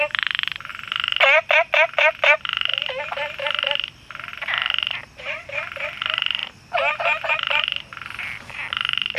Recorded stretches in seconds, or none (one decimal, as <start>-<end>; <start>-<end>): 0.7-2.2; 2.7-3.9; 4.3-5.2; 6.4-7.3